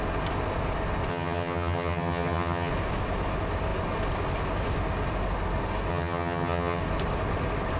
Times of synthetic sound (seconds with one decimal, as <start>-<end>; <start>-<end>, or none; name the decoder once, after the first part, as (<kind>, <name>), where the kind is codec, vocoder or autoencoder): 1.1-2.7 (vocoder, HiFi-GAN); 5.9-6.8

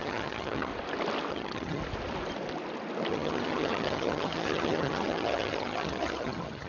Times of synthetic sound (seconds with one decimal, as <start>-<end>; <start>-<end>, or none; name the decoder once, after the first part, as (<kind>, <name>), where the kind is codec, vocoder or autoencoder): 0.0-0.7 (vocoder, HiFi-GAN); 1.3-1.8; 3.1-6.7